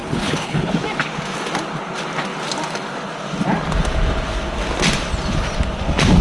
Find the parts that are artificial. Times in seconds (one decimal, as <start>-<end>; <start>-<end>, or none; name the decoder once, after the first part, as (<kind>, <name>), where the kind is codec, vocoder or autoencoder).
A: 0.0-0.7 (codec, HILCodec)